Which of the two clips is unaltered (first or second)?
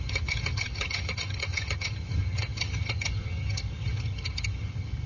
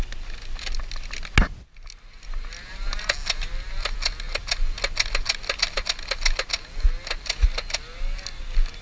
second